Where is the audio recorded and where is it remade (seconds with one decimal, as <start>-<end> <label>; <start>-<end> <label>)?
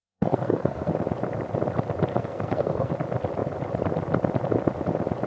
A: 0.0-0.9 remade; 0.9-2.1 recorded; 2.1-2.9 remade; 2.9-5.3 recorded